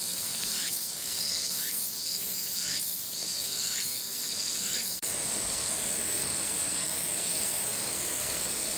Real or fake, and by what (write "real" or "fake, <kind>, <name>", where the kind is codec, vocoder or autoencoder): fake, codec, SNAC